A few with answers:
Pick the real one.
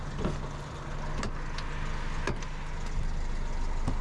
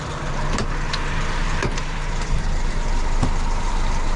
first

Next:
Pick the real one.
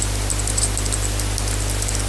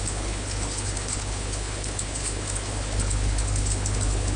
first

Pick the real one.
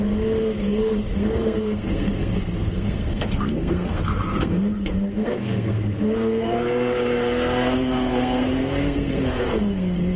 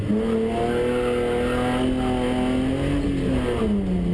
second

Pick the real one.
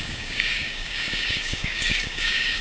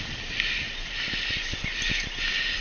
second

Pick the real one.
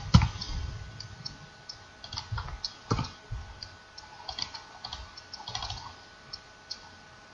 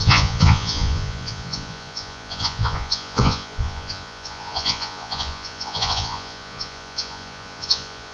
first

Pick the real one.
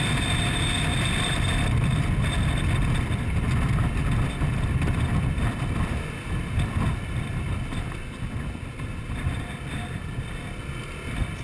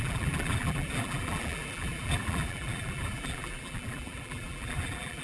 first